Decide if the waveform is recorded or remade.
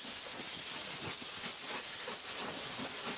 recorded